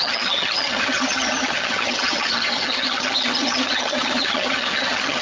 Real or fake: fake